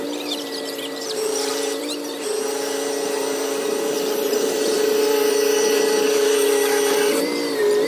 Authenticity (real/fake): fake